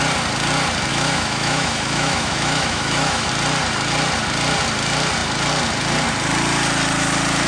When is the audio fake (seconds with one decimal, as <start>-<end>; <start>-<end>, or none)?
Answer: 0.9-3.3